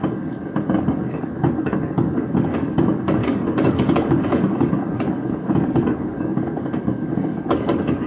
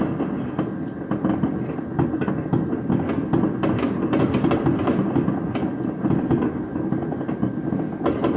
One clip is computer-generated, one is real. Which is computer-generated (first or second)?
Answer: first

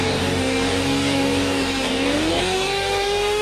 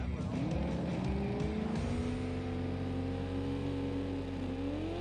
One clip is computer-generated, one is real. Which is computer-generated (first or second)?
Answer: first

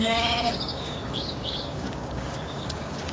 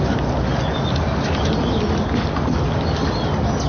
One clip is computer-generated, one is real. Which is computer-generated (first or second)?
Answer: first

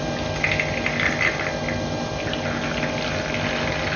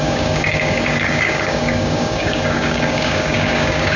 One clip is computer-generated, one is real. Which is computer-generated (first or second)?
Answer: second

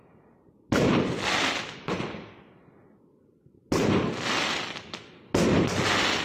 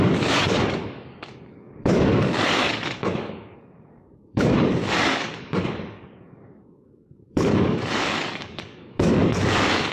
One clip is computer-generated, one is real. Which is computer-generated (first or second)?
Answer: second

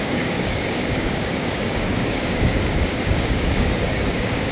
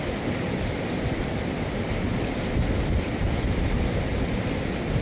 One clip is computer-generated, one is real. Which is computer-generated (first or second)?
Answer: first